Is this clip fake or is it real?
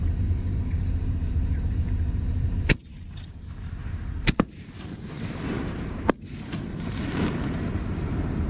fake